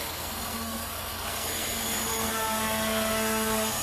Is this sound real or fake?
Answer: fake